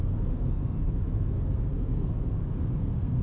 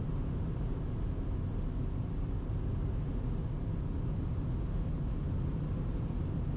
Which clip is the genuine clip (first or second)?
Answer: second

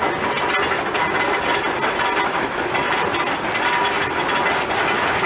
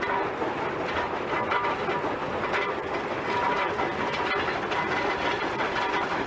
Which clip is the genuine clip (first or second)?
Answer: first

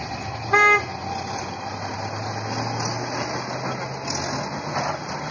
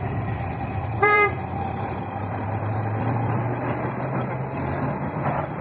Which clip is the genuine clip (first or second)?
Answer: first